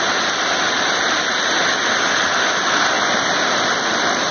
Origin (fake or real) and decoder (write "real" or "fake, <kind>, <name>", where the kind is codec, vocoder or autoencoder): real